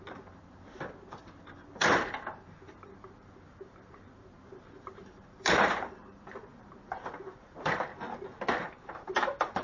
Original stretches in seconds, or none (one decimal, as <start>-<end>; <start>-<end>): 7.9-8.6